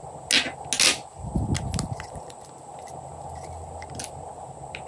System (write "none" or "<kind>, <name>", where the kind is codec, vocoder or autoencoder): none